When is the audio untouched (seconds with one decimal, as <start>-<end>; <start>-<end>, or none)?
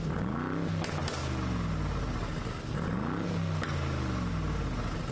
0.0-5.1